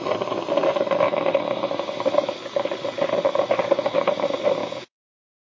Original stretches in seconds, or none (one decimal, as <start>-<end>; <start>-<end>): 0.0-4.6

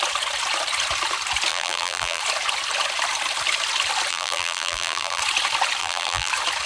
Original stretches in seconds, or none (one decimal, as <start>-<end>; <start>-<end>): 0.0-1.5; 2.2-4.1; 5.2-5.8; 6.3-6.7

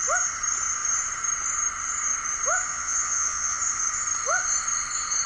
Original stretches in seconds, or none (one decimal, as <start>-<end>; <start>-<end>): 0.0-2.7; 3.6-5.3

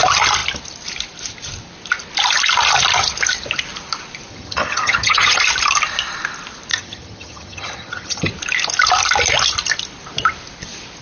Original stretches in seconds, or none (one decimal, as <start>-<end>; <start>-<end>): 0.0-4.3; 5.4-6.7; 8.3-11.0

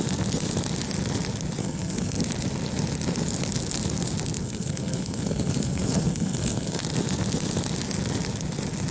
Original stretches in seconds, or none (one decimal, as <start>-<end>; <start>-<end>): 0.0-1.6; 2.2-4.4; 6.8-8.9